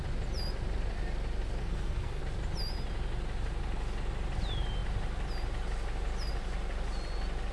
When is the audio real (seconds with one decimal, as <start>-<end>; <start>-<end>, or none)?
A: 0.0-1.6; 2.2-7.5